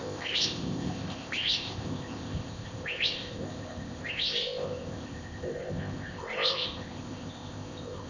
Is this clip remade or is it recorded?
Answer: remade